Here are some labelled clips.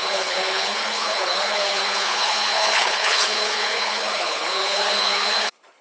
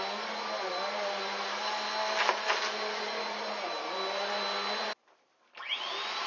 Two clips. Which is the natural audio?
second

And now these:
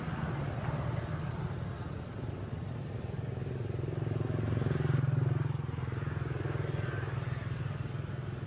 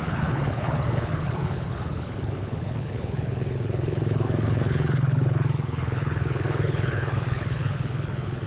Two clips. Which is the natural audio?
first